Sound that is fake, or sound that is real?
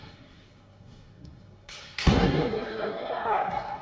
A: fake